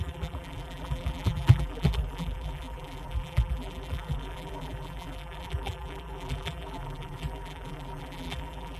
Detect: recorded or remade remade